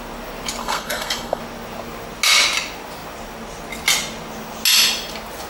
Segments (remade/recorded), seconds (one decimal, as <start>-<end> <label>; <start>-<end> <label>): 0.0-0.6 recorded; 0.6-1.4 remade; 1.4-5.5 recorded